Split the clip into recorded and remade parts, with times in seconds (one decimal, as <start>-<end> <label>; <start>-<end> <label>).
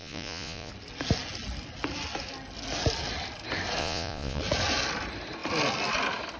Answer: 0.0-0.7 remade; 0.7-3.8 recorded; 3.8-4.4 remade; 4.4-6.4 recorded